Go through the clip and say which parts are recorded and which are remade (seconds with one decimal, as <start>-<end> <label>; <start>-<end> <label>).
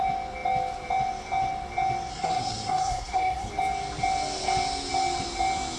0.0-2.1 recorded; 2.1-3.5 remade; 3.5-5.8 recorded